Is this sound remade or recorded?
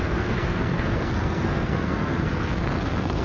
remade